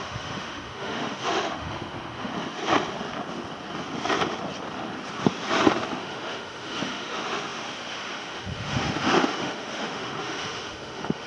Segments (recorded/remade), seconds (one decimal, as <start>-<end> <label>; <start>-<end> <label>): 0.0-2.3 remade; 2.3-6.0 recorded; 6.0-11.3 remade